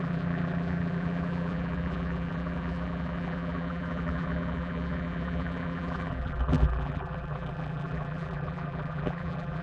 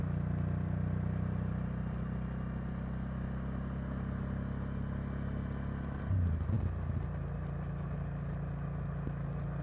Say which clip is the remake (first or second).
first